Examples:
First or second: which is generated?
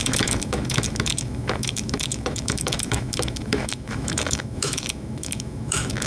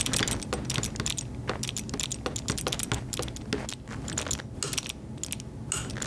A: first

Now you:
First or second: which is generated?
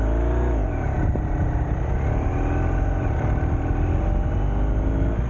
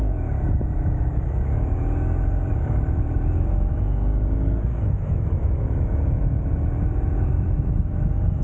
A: second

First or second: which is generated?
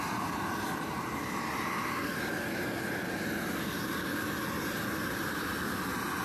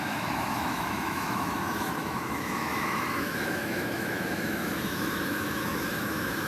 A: second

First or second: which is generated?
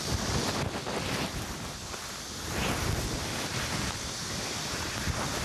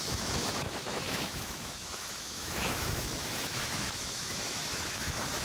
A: second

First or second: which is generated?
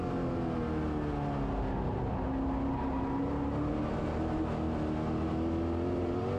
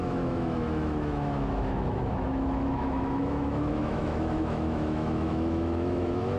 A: second